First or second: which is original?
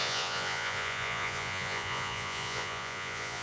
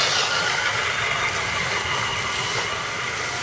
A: second